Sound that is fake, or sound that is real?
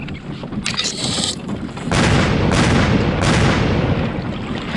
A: real